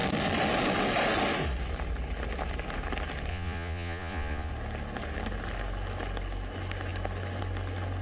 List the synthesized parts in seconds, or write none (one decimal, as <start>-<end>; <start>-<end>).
3.3-4.5